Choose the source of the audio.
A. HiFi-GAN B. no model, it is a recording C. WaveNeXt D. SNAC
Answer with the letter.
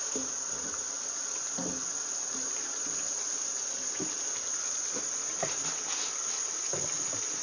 B